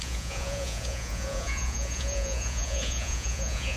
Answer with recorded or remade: remade